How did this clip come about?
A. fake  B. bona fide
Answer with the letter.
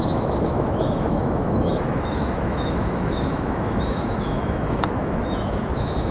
A